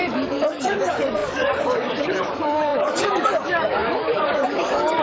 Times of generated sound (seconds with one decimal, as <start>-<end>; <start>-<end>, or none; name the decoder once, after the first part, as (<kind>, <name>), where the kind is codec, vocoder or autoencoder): 0.0-5.0 (codec, DAC)